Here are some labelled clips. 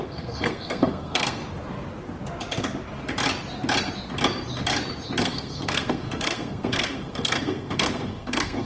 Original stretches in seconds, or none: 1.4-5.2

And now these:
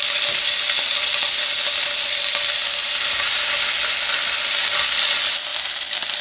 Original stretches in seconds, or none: 0.0-6.2

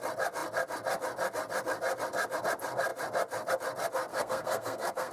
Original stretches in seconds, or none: 0.0-4.1

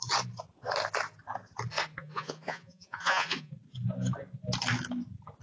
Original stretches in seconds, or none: 0.0-2.0; 3.5-5.4